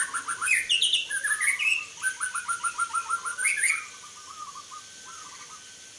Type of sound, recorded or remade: recorded